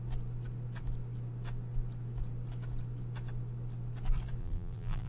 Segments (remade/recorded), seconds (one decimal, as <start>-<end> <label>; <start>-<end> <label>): 0.0-4.4 recorded; 4.4-5.1 remade